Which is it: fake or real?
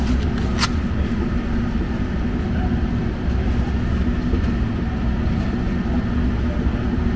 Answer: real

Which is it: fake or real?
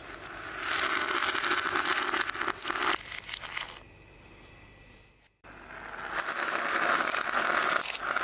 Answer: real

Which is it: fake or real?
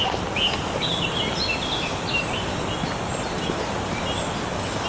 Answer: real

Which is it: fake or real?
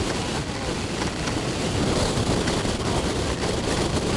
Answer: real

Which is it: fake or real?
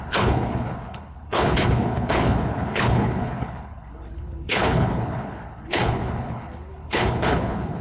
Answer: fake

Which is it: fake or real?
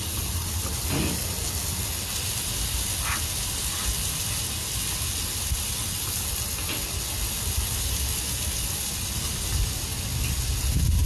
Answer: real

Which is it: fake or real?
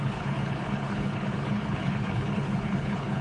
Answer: fake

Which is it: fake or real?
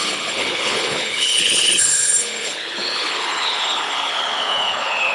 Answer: fake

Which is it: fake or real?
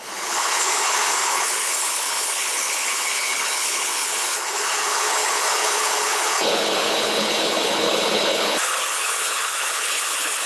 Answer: fake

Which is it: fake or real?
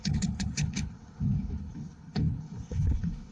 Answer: fake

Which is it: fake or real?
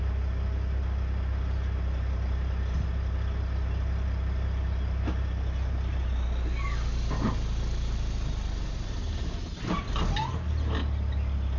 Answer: real